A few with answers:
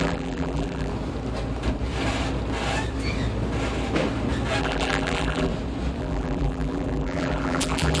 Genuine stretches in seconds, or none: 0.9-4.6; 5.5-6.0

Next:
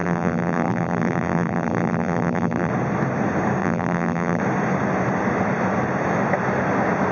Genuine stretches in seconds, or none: 2.7-3.6; 4.4-7.1

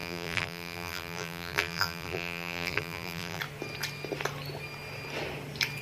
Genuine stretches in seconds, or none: 3.4-5.8

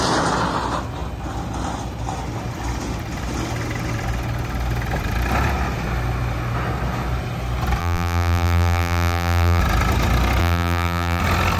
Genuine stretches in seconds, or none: 0.0-7.8; 9.6-10.4; 11.2-11.6

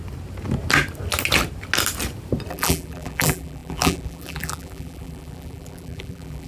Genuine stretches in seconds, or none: 0.0-2.5

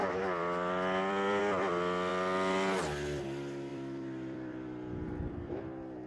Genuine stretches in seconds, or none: 1.4-2.1; 3.2-3.7; 5.2-6.1

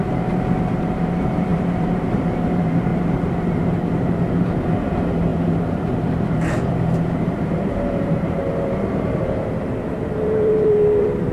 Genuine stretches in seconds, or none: none

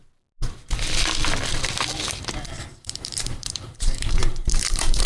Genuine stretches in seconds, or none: 0.0-2.6